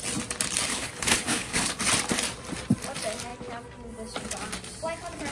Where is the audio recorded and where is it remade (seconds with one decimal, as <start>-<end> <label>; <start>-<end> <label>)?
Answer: 0.0-0.7 recorded; 0.7-1.8 remade; 1.8-5.3 recorded